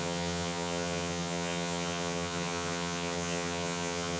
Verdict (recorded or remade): remade